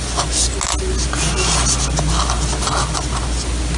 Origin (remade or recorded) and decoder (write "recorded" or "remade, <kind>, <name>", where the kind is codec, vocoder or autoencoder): recorded